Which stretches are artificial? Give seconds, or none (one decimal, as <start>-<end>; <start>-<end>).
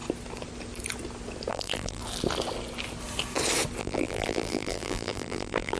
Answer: 1.5-2.0; 3.8-5.8